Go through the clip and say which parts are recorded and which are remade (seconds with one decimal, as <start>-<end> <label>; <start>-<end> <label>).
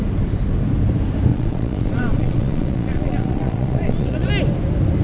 0.0-1.3 recorded; 1.3-4.3 remade; 4.3-5.0 recorded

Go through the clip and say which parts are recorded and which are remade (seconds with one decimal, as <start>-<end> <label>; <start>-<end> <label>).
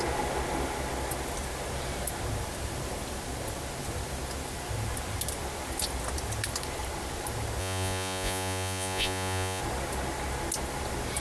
0.0-7.6 recorded; 7.6-9.6 remade; 9.6-11.2 recorded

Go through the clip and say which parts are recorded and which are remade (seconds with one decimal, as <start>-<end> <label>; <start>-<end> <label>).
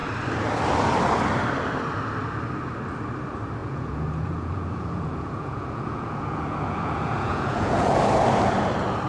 0.0-3.6 recorded; 3.6-8.0 remade; 8.0-9.1 recorded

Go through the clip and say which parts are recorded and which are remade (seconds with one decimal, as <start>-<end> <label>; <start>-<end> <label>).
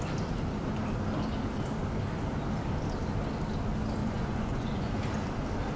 0.0-4.0 recorded; 4.0-4.9 remade; 4.9-5.8 recorded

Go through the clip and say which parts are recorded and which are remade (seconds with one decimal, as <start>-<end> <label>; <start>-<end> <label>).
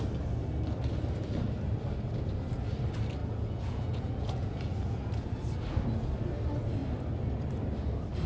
0.0-3.2 recorded; 3.2-5.0 remade; 5.0-8.3 recorded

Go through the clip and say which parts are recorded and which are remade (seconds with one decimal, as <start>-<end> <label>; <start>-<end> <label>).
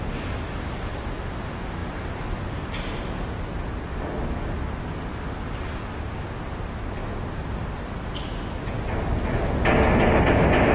0.0-10.7 recorded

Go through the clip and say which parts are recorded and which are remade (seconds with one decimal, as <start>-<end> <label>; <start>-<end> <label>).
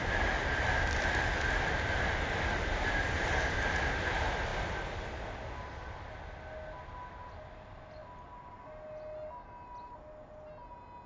0.0-11.1 recorded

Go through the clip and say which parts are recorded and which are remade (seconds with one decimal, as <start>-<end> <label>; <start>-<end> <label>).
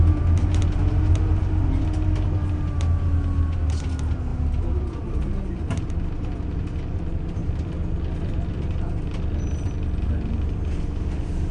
0.0-11.5 recorded